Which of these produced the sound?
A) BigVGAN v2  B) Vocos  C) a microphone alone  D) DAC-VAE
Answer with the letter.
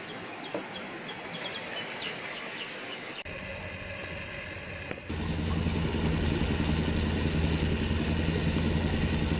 C